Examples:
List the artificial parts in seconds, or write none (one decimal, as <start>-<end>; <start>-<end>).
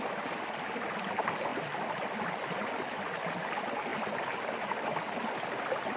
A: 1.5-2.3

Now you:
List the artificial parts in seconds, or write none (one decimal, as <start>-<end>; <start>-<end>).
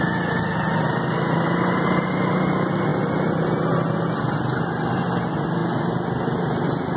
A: none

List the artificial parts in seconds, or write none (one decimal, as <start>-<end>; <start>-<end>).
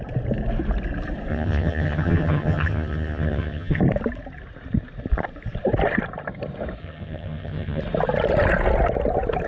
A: 1.3-3.8; 6.8-7.8